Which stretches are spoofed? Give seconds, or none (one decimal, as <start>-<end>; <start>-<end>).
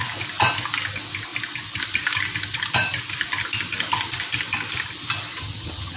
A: 5.4-6.0